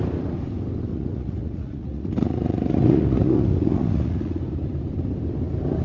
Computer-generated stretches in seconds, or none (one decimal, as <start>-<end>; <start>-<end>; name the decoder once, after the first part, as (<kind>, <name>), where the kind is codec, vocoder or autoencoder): 0.9-4.4 (vocoder, Vocos)